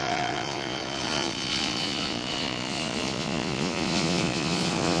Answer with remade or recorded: remade